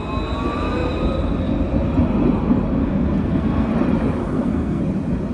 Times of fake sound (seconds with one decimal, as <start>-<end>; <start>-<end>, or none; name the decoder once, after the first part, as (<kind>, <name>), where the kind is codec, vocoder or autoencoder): 2.8-3.7 (codec, SNAC); 4.2-4.8